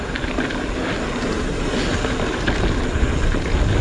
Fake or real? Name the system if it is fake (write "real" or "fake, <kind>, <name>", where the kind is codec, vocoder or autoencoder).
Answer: real